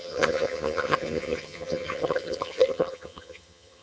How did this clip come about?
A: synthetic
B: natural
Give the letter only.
A